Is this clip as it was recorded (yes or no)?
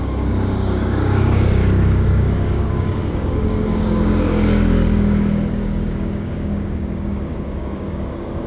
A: no